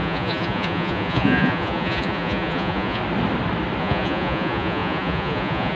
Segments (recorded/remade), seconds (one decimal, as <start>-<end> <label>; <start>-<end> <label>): 0.0-3.0 remade; 3.0-3.8 recorded; 3.8-5.7 remade